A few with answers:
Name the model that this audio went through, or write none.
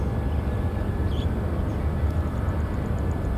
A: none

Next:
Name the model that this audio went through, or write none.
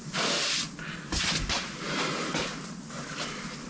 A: none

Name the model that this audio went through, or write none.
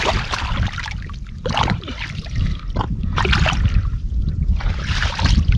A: vocoder, BigVGAN v2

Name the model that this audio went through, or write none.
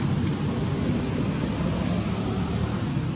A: none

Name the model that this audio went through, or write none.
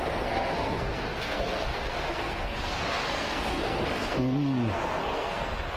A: codec, SNAC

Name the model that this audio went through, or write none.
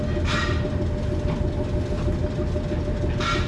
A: none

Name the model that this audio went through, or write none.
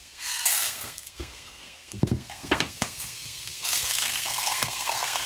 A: codec, SNAC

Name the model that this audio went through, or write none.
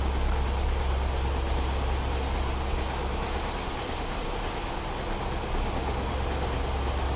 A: none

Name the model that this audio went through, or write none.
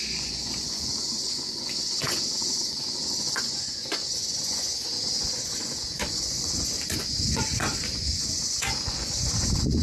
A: vocoder, Vocos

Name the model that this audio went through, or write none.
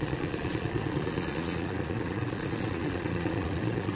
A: vocoder, Vocos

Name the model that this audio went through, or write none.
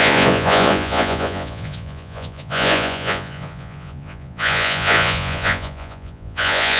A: vocoder, Vocos